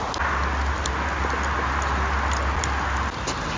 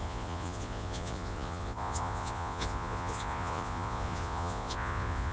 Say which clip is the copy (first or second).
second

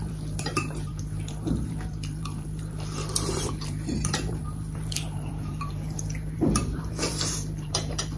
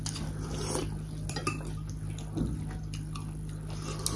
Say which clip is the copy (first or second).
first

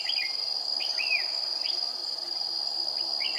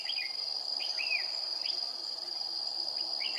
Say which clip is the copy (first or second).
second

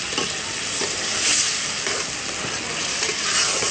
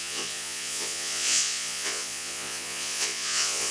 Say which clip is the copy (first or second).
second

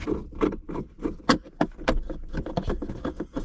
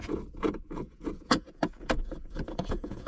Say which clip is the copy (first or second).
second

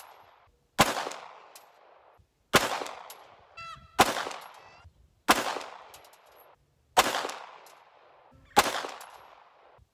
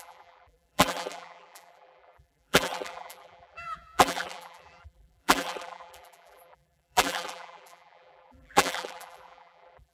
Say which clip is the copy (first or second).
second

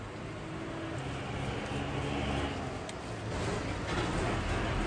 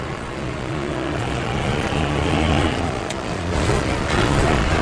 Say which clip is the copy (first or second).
second